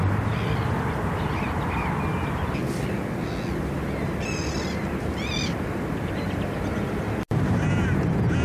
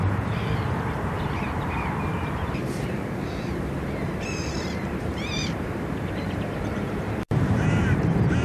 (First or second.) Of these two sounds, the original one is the first